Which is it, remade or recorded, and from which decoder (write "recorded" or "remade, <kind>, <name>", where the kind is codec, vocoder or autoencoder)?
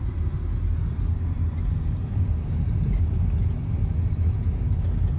recorded